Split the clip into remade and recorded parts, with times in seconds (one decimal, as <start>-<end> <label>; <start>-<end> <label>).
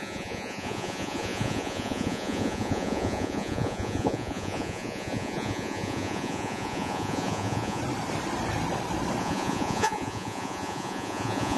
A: 0.0-7.8 remade; 7.8-9.2 recorded; 9.2-11.6 remade